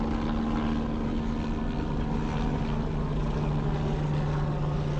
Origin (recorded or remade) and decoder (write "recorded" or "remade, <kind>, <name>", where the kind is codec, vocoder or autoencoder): recorded